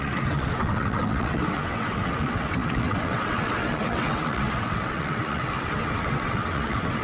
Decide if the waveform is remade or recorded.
remade